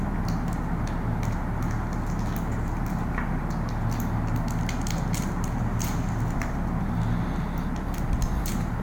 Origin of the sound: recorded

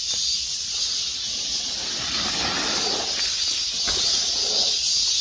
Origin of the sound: recorded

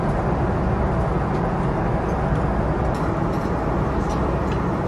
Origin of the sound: recorded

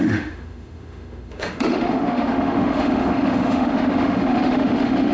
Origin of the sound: remade